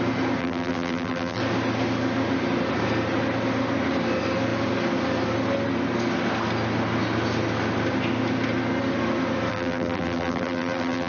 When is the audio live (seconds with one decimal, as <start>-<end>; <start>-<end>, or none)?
0.0-0.4; 1.4-9.5